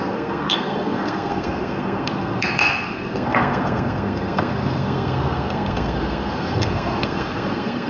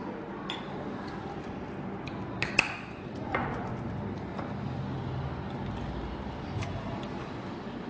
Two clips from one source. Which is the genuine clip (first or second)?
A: second